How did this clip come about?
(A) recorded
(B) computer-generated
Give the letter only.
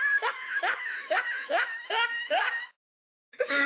B